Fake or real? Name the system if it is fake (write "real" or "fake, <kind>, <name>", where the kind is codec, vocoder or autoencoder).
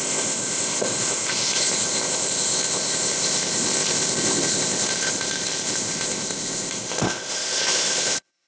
fake, codec, ZipCodec